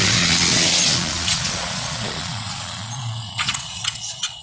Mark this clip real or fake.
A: fake